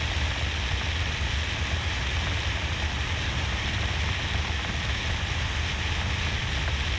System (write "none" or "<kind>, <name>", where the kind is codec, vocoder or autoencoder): none